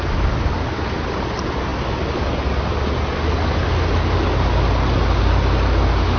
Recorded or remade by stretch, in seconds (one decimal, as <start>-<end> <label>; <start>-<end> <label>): 0.0-6.2 recorded